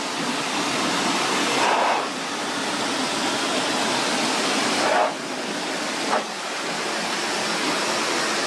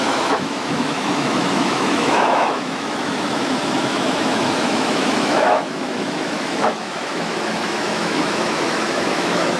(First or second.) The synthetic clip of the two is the second